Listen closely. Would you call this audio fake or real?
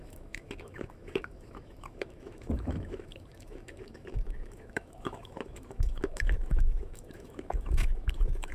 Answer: fake